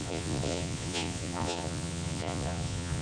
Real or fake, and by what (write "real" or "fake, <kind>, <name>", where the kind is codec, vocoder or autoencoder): fake, vocoder, Vocos